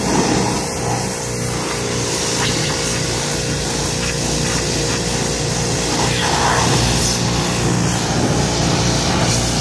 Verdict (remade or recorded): recorded